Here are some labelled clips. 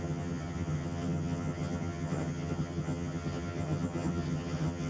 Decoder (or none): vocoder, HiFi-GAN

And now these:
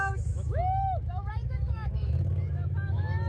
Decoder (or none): autoencoder, DAC-VAE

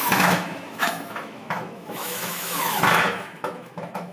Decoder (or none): autoencoder, DAC-VAE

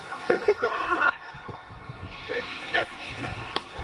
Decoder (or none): codec, SNAC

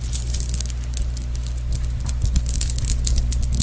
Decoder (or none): none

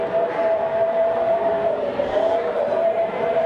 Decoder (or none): vocoder, BigVGAN v2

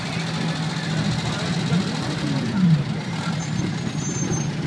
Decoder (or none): none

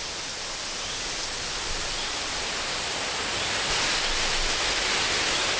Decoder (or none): none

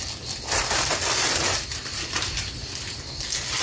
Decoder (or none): none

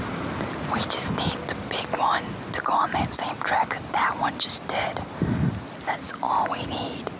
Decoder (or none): none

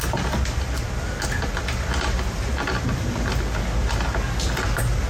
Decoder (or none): none